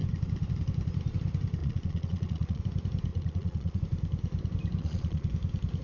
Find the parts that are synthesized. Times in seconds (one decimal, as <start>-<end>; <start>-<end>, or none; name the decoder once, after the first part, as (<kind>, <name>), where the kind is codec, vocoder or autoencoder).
1.6-2.6 (vocoder, Vocos); 3.1-3.8; 4.8-5.3